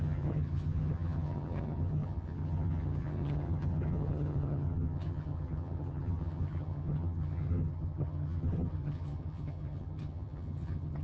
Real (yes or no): no